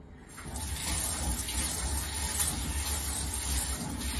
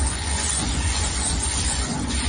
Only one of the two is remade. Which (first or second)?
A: second